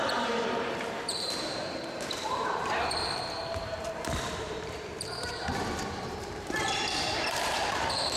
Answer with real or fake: fake